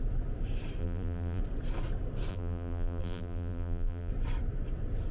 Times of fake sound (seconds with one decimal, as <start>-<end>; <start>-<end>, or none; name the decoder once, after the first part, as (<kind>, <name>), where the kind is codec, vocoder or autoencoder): 0.8-1.4 (vocoder, BigVGAN v2); 2.3-4.1